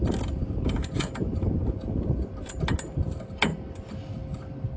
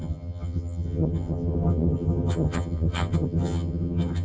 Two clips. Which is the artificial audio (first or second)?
second